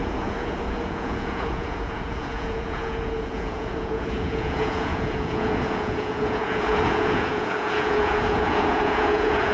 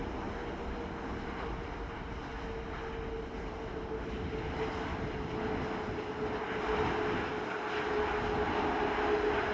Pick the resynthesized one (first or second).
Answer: first